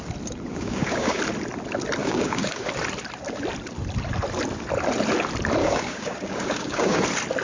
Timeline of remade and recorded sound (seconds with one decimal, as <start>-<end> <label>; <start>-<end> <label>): 0.0-0.5 recorded; 0.5-1.2 remade; 1.2-2.0 recorded; 2.0-2.7 remade; 2.7-5.6 recorded; 5.6-7.0 remade; 7.0-7.4 recorded